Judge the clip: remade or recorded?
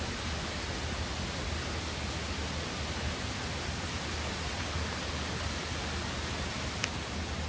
recorded